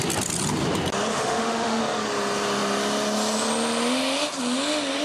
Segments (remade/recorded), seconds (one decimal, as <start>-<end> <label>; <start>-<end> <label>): 0.0-1.1 recorded; 1.1-1.8 remade; 1.8-5.0 recorded